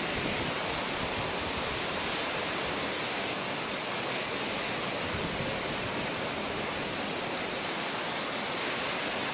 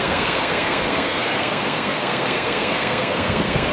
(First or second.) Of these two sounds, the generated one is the second